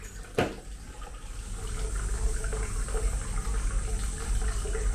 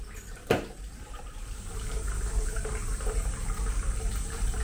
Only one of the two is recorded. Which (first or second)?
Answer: first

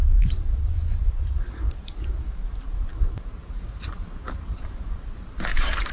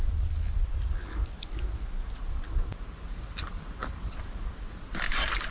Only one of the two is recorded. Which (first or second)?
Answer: second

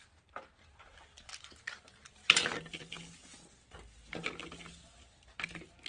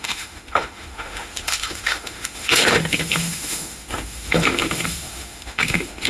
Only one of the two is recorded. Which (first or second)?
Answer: first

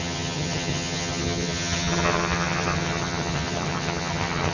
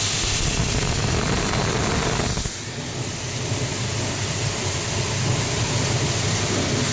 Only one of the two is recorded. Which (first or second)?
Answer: second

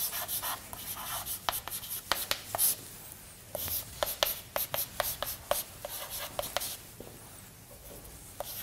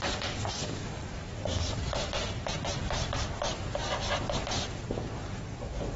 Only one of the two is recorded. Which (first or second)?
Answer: first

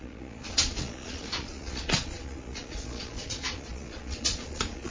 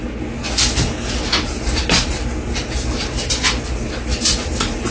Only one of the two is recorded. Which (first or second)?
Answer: second